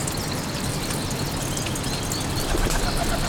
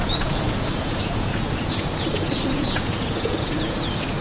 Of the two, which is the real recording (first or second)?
first